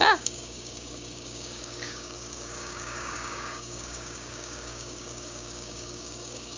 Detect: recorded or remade remade